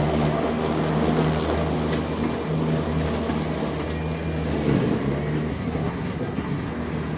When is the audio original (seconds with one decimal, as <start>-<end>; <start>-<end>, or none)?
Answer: 0.0-5.5; 6.7-7.2